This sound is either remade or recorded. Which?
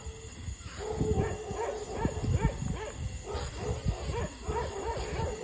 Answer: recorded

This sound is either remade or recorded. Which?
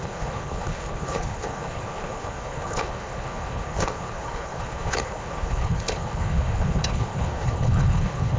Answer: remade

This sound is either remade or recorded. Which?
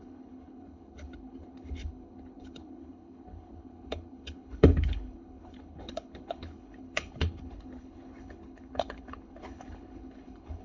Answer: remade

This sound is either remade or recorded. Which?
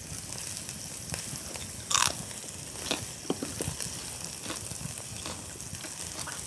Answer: recorded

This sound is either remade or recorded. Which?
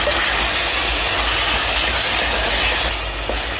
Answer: recorded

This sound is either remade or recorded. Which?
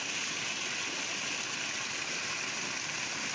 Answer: recorded